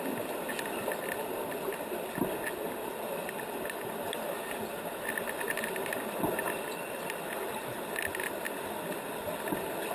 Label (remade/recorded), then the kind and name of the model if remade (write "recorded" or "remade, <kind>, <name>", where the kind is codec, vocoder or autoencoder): recorded